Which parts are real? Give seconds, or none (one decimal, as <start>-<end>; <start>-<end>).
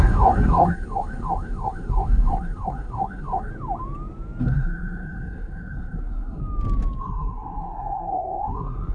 3.5-4.4; 6.4-7.0